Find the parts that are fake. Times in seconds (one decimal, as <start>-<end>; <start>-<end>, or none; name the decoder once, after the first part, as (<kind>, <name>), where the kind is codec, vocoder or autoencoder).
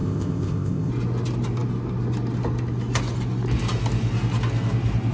0.0-0.9 (codec, ZipCodec)